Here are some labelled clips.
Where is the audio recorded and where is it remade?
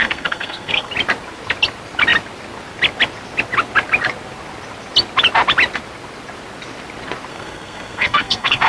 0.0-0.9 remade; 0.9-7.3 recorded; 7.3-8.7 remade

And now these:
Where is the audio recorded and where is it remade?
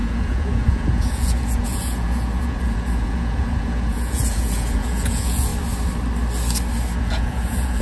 0.0-5.5 remade; 5.5-7.0 recorded; 7.0-7.8 remade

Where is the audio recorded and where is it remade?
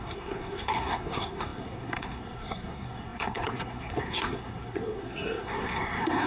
0.0-6.3 remade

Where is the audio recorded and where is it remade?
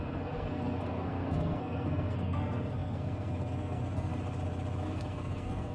0.0-4.1 remade; 4.1-4.9 recorded; 4.9-5.7 remade